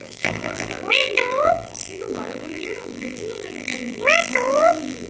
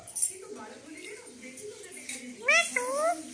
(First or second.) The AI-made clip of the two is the first